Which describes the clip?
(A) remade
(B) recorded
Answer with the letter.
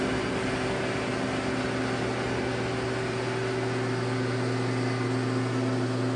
B